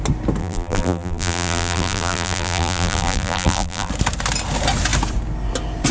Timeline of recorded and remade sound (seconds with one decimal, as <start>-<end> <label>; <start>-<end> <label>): 0.0-0.4 recorded; 0.4-3.9 remade; 3.9-5.9 recorded